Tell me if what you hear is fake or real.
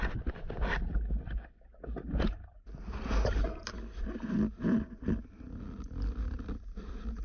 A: real